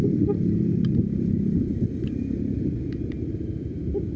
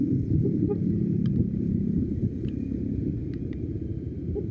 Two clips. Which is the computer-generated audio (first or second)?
second